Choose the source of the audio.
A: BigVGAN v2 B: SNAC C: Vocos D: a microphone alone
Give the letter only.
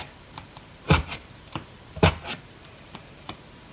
A